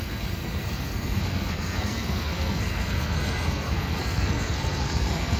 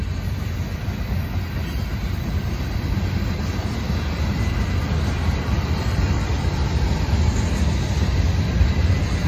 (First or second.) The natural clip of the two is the second